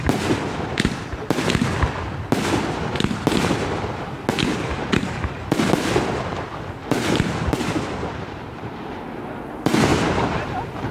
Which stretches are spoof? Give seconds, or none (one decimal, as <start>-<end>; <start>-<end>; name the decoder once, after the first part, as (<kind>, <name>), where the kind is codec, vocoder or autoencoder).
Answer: 4.7-5.7 (vocoder, BigVGAN v2); 6.8-9.2; 9.9-10.9